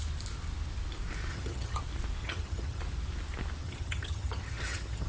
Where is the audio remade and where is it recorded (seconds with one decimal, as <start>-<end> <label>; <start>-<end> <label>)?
0.0-1.3 recorded; 1.3-1.8 remade; 1.8-2.2 recorded; 2.2-2.8 remade; 2.8-3.6 recorded; 3.6-5.1 remade